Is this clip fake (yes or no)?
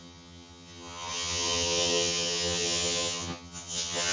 yes